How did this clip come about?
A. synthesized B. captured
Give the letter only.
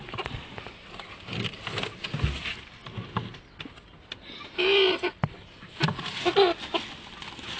B